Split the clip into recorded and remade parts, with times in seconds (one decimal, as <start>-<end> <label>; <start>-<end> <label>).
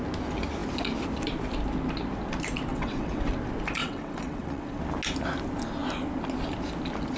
0.0-2.7 recorded; 2.7-3.3 remade; 3.3-3.8 recorded; 3.8-4.8 remade; 4.8-7.2 recorded